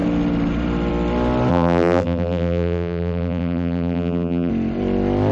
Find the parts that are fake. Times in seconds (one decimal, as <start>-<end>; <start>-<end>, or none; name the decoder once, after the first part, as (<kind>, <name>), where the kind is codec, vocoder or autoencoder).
1.5-4.5 (vocoder, BigVGAN v2)